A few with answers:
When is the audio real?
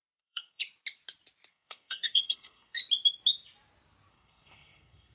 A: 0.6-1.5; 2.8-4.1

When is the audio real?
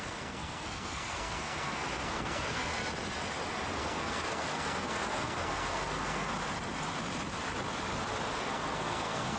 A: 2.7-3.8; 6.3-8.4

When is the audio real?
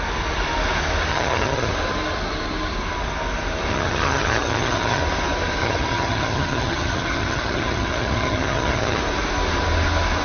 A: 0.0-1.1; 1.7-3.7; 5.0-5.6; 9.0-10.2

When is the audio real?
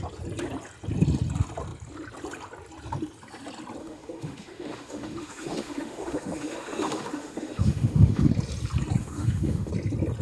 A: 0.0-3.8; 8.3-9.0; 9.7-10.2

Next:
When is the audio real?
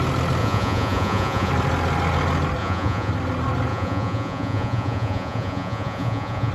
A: 0.0-0.4; 1.5-2.6; 3.1-3.7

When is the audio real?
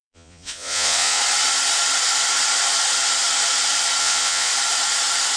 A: 1.2-4.0; 4.5-5.4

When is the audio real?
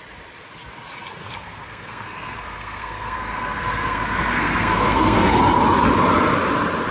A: 0.0-1.2; 5.3-6.9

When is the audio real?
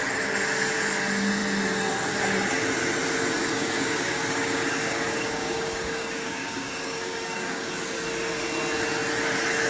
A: 0.0-3.4; 7.7-9.7